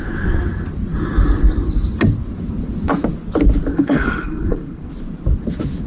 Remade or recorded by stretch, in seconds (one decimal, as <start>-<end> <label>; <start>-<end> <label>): 0.0-3.7 recorded; 3.7-4.9 remade; 4.9-5.9 recorded